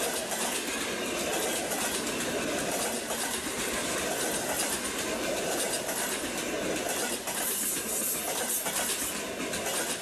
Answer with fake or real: real